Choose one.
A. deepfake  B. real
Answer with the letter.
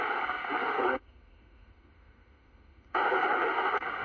A